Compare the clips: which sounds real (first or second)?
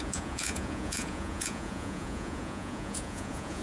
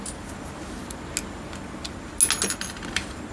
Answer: second